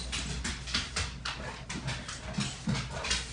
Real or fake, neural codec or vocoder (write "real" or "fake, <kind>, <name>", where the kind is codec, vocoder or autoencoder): real